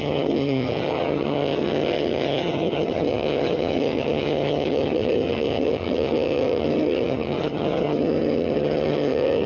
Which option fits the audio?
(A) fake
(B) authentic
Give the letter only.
A